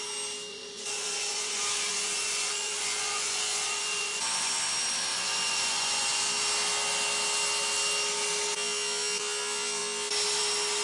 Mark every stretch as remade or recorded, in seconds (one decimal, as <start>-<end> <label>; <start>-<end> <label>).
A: 0.0-0.5 recorded; 0.5-4.6 remade; 4.6-5.1 recorded; 5.1-6.3 remade; 6.3-10.8 recorded

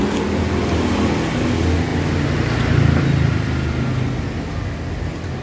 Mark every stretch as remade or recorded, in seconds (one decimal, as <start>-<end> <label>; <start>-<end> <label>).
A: 0.0-5.4 recorded